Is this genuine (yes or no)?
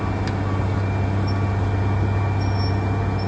yes